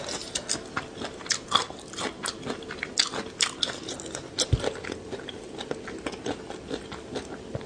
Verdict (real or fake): real